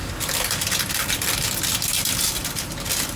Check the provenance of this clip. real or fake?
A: fake